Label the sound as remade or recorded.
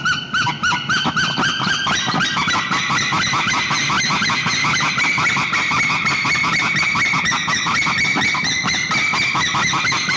remade